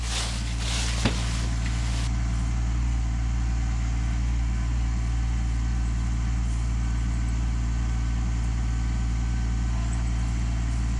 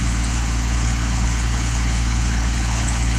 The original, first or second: first